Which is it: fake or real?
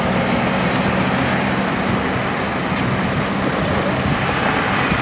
real